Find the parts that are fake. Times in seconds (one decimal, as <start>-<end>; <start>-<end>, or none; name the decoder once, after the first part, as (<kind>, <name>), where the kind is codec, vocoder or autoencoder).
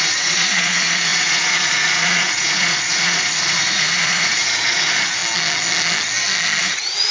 0.0-5.2 (vocoder, Vocos); 6.6-7.1